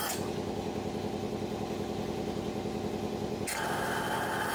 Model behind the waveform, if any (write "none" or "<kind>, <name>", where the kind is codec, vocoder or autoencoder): none